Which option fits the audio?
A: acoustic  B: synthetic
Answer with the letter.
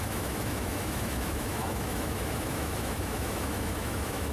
B